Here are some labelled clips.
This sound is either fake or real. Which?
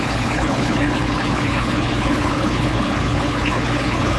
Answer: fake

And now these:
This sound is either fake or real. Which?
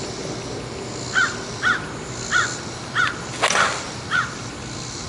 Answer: real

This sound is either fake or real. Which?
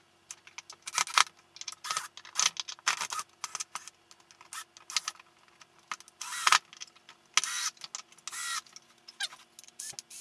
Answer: real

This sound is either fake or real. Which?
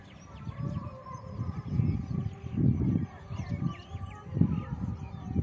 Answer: real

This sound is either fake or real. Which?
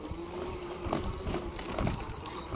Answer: real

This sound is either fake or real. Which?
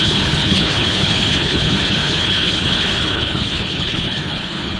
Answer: fake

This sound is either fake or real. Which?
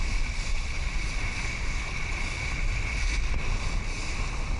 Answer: real